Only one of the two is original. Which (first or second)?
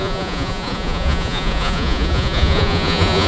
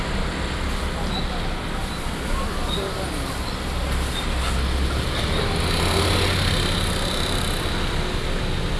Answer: second